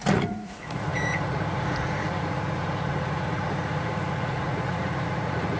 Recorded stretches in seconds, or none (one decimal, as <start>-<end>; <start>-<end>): none